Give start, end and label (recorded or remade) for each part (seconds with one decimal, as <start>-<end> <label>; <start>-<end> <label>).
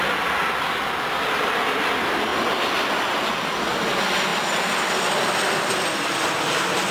0.0-6.9 recorded